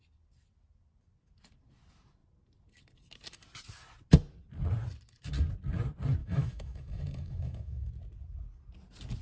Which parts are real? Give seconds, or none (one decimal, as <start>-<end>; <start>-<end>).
0.0-6.2; 7.9-9.2